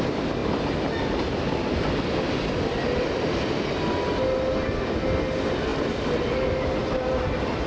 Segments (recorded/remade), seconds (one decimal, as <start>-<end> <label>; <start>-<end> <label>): 0.0-7.7 recorded